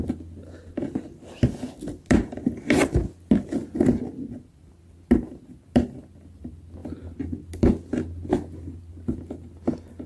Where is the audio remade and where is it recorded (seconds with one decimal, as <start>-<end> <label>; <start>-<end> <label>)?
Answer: 0.0-10.1 recorded